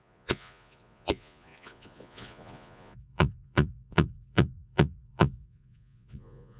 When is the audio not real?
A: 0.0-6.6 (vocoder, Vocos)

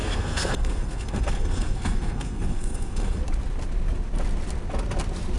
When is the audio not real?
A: 0.0-3.2 (codec, SNAC)